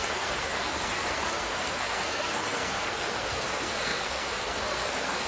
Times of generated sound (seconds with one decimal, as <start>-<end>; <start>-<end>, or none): 0.0-5.3